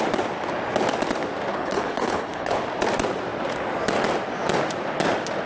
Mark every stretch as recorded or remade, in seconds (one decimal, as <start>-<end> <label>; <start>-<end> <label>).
0.0-1.5 recorded; 1.5-2.6 remade; 2.6-5.5 recorded